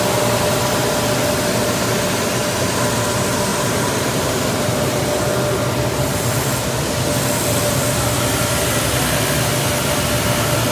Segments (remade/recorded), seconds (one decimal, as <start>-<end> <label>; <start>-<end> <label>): 0.0-3.5 recorded; 3.5-5.0 remade; 5.0-10.7 recorded